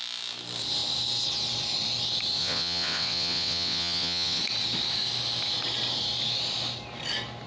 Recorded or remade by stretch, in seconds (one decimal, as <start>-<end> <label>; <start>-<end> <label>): 0.0-2.4 recorded; 2.4-4.4 remade; 4.4-7.5 recorded